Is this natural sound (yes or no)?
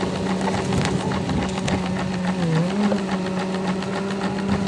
yes